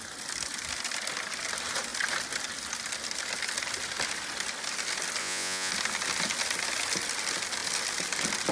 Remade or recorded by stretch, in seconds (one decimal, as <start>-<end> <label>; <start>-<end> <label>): 0.0-5.2 recorded; 5.2-5.7 remade; 5.7-8.5 recorded